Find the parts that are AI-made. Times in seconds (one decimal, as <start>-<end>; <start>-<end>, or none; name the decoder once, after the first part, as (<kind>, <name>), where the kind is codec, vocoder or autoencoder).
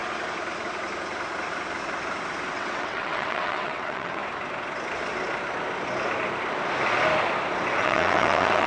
2.5-4.2 (vocoder, WaveNeXt); 7.8-8.7